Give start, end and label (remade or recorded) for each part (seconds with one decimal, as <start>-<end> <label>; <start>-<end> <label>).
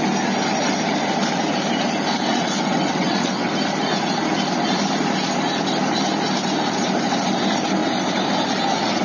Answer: 0.0-2.2 recorded; 2.2-3.5 remade; 3.5-9.0 recorded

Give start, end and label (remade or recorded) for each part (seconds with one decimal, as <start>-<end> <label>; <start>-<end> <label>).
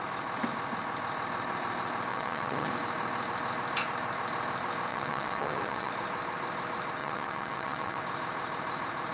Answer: 0.0-2.1 recorded; 2.1-2.7 remade; 2.7-4.9 recorded; 4.9-5.9 remade; 5.9-7.0 recorded; 7.0-8.0 remade; 8.0-9.1 recorded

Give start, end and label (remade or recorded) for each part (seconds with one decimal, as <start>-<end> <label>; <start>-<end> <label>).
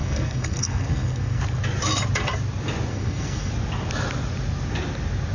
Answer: 0.0-1.4 remade; 1.4-2.9 recorded; 2.9-3.5 remade; 3.5-5.3 recorded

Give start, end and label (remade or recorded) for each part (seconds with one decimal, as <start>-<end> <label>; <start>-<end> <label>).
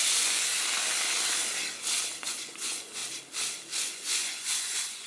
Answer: 0.0-0.5 remade; 0.5-2.2 recorded; 2.2-3.0 remade; 3.0-3.9 recorded; 3.9-5.1 remade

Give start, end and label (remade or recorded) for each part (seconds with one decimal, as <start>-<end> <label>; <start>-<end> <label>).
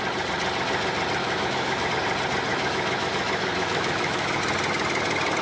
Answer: 0.0-1.2 recorded; 1.2-1.9 remade; 1.9-2.5 recorded; 2.5-4.4 remade; 4.4-5.4 recorded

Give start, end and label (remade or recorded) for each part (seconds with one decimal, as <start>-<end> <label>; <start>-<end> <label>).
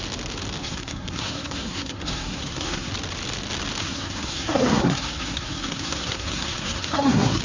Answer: 0.0-0.6 recorded; 0.6-2.9 remade; 2.9-3.8 recorded; 3.8-7.4 remade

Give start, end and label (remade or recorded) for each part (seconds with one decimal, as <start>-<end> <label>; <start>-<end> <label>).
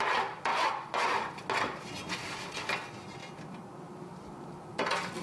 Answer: 0.0-0.5 recorded; 0.5-1.1 remade; 1.1-5.2 recorded